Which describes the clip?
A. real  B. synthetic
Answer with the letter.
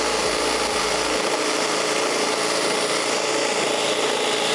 A